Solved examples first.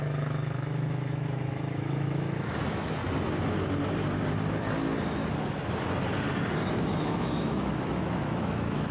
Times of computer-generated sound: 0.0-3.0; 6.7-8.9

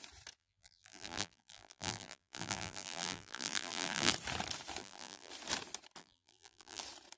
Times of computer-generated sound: 0.4-4.1; 4.8-5.3; 6.0-6.8

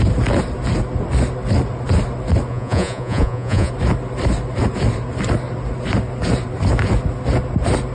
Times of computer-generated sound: 2.5-3.7

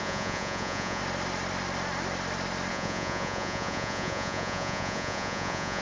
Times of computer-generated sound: 0.0-1.0; 2.7-5.8

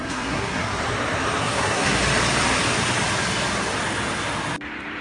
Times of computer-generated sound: 0.0-0.7; 1.4-2.0